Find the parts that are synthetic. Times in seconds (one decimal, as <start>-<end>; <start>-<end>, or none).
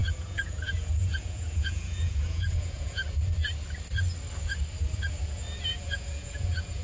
0.0-3.0; 5.6-6.8